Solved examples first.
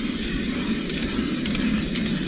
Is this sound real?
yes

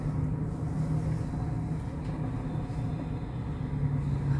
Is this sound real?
yes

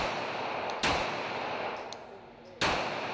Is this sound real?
yes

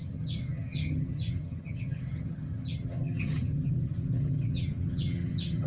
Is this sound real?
no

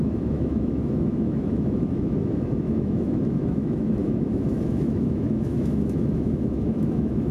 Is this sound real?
no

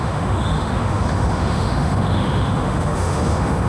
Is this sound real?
no